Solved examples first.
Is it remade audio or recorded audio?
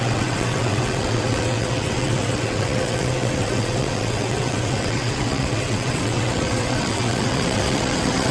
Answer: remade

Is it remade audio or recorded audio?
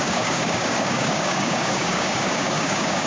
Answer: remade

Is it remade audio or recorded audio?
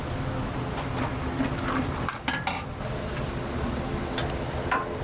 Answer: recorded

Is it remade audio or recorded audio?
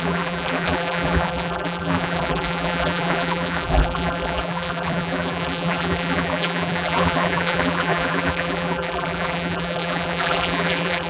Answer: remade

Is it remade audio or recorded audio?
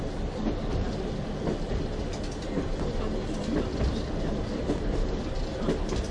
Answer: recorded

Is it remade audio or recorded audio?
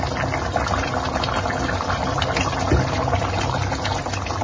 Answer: recorded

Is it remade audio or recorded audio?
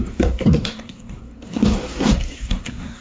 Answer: remade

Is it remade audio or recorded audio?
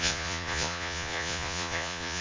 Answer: remade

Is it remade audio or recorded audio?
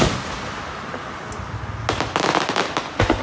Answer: recorded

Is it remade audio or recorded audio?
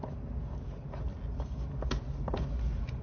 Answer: recorded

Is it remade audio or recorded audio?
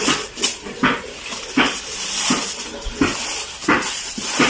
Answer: recorded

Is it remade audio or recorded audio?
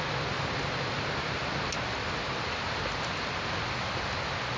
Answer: recorded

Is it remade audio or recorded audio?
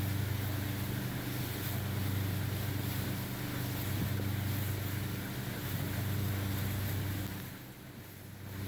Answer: recorded